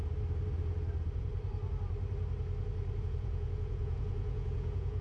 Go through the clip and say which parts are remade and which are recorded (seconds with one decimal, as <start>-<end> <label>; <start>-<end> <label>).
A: 0.0-3.0 recorded; 3.0-5.0 remade